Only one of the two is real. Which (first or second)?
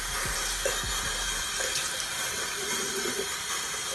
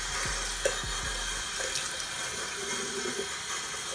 second